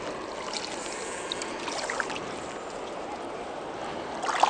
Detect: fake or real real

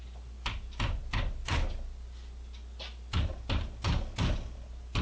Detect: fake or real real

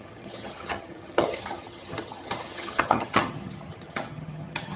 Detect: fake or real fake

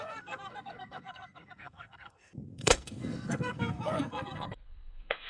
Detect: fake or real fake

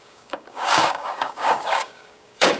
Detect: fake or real fake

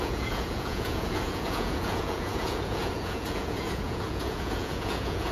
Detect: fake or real fake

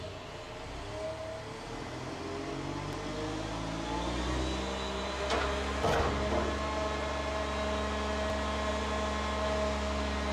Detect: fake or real real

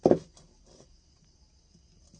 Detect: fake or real real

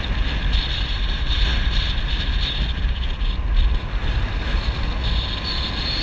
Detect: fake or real real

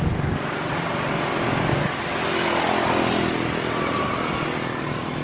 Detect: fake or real real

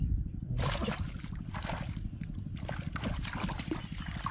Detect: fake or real fake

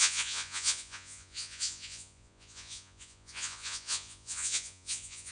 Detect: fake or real fake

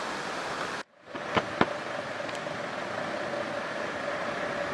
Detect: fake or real real